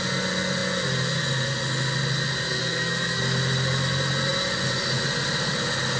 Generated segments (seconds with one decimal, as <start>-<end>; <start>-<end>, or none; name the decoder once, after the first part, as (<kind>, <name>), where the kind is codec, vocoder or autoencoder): 2.5-3.2 (codec, SNAC)